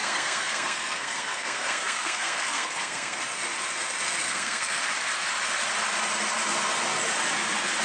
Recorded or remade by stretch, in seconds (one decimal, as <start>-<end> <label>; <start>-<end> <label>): 0.0-3.2 remade; 3.2-4.2 recorded; 4.2-4.8 remade; 4.8-7.8 recorded